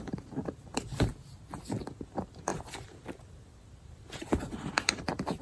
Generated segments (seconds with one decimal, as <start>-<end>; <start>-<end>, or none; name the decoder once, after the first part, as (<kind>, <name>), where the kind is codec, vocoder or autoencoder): 0.0-1.1 (vocoder, BigVGAN v2); 2.0-2.5; 3.2-5.4